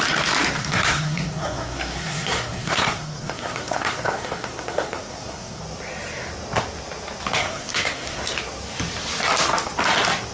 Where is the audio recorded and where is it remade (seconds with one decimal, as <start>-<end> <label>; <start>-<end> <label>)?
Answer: 0.0-0.6 recorded; 0.6-5.6 remade; 5.6-7.4 recorded; 7.4-8.2 remade; 8.2-10.3 recorded